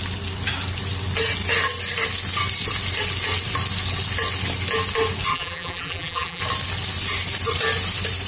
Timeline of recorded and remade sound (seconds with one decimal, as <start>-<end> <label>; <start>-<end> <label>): 0.0-5.3 recorded; 5.3-6.4 remade; 6.4-8.3 recorded